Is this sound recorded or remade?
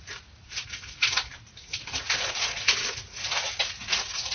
remade